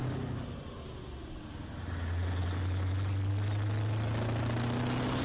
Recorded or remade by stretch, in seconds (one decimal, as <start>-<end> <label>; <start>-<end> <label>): 0.0-5.2 recorded